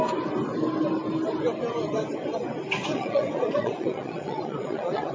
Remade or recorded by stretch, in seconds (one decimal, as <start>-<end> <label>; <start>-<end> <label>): 0.0-2.9 recorded; 2.9-5.1 remade